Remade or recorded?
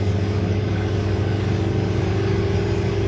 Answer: remade